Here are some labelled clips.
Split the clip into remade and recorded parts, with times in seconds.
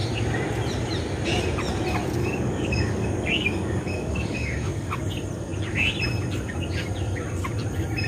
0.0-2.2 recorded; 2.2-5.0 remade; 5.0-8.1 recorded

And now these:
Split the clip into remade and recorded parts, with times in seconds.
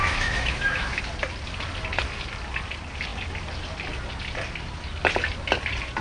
0.0-1.0 remade; 1.0-6.0 recorded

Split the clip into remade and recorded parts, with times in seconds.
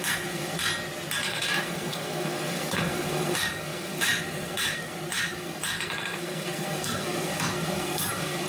0.0-0.7 remade; 0.7-1.2 recorded; 1.2-8.5 remade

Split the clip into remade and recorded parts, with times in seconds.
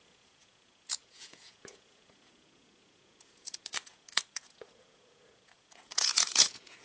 0.0-6.8 remade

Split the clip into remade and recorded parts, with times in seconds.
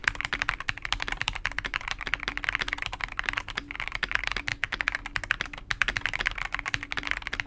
0.0-4.5 recorded; 4.5-5.0 remade; 5.0-7.5 recorded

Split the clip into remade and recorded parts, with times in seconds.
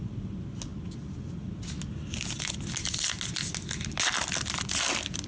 0.0-5.3 recorded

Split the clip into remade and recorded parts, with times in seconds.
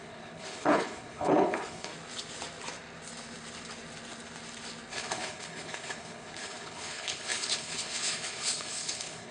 0.0-1.9 remade; 1.9-4.9 recorded; 4.9-9.3 remade